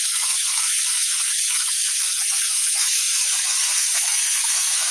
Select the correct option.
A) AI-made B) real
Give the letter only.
A